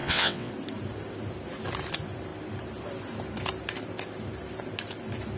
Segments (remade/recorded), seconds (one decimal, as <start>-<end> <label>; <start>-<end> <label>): 0.0-0.5 remade; 0.5-5.4 recorded

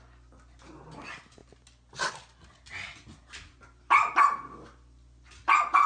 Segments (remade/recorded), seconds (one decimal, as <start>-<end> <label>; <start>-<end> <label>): 0.0-5.9 recorded

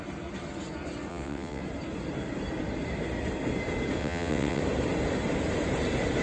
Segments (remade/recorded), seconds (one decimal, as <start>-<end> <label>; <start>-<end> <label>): 0.0-1.1 recorded; 1.1-1.6 remade; 1.6-4.0 recorded; 4.0-4.6 remade; 4.6-6.2 recorded

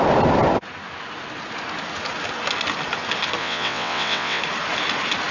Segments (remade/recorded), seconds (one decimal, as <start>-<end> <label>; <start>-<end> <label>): 0.0-3.4 recorded; 3.4-4.4 remade; 4.4-5.3 recorded